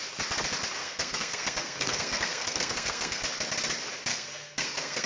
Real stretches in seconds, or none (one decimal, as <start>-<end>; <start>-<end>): 0.0-0.8; 3.2-4.1